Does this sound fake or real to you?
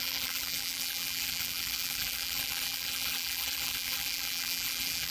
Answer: fake